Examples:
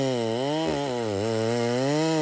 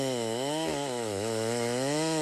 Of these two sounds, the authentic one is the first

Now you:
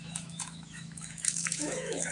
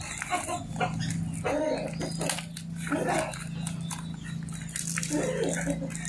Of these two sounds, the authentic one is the second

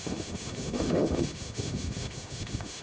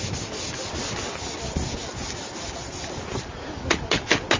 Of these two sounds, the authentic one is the second